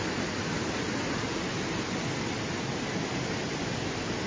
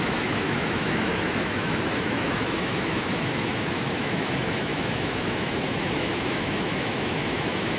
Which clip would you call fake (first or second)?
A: second